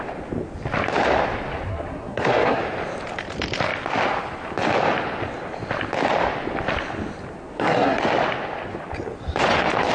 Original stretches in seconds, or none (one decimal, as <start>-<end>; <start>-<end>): 0.0-1.7; 2.6-7.4; 8.0-9.9